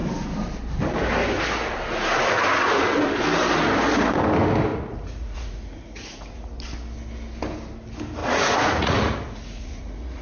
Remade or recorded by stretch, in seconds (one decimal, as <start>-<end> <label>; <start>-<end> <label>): 0.0-4.7 recorded; 4.7-6.5 remade; 6.5-8.2 recorded; 8.2-10.2 remade